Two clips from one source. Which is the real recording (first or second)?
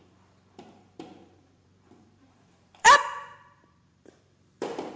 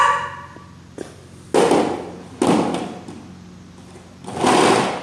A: second